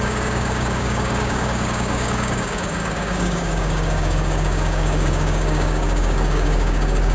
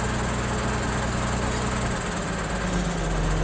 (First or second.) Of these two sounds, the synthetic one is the first